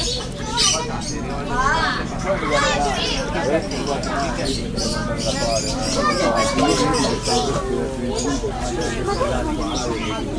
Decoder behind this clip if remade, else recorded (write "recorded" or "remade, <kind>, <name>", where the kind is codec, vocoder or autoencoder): recorded